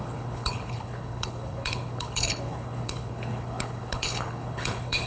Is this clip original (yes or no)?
no